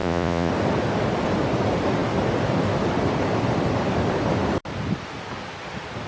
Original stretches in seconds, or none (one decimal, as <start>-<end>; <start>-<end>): 0.5-6.1